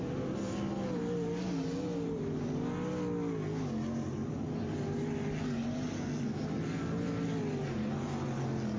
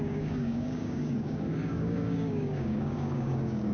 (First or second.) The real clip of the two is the first